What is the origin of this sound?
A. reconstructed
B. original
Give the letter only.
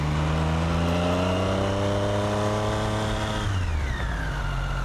B